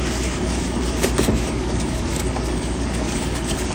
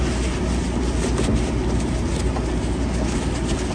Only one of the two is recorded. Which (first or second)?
second